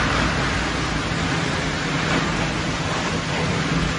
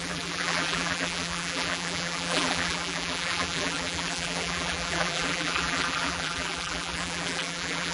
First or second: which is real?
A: first